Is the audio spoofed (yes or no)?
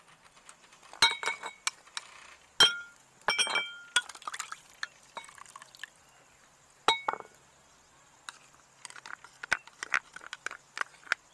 no